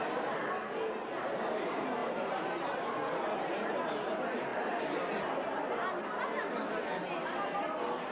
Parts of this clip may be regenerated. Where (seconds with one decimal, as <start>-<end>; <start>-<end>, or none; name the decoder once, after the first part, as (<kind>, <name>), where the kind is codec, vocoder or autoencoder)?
none